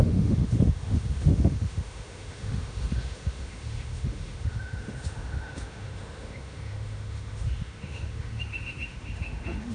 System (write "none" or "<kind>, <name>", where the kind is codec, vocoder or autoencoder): autoencoder, DAC-VAE